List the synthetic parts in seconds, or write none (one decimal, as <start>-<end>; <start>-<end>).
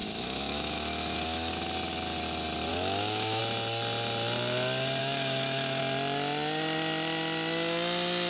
0.0-1.5; 2.7-3.4; 5.0-5.8